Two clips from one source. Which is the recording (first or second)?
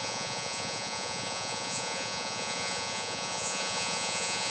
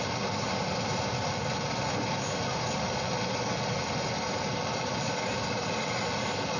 second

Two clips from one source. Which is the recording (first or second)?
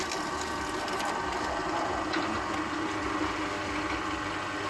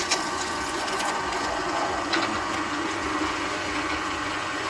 first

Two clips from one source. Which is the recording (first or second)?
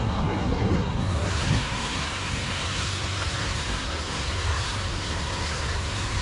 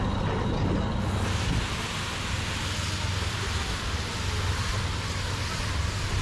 second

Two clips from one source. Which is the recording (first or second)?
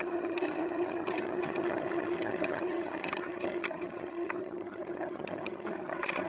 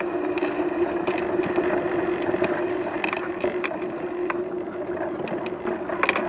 second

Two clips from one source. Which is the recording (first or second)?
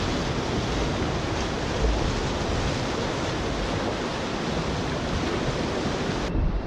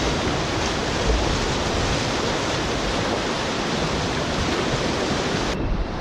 first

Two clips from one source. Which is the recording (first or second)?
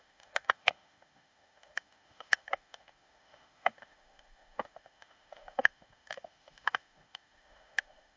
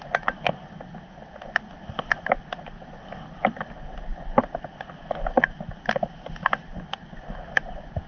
second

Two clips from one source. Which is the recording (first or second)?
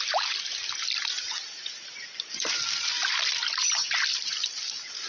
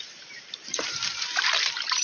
first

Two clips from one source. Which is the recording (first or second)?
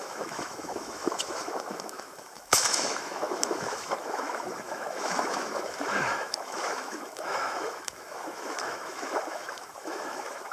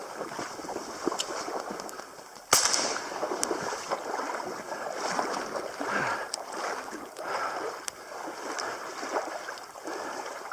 second